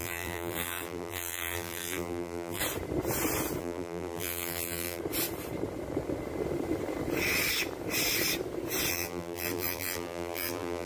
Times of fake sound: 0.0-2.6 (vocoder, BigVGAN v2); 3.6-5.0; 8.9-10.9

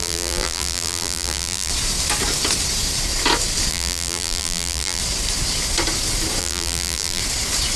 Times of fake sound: 0.0-1.7 (vocoder, BigVGAN v2); 3.7-5.0; 6.4-7.2